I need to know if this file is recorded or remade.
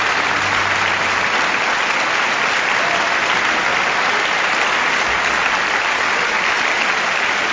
recorded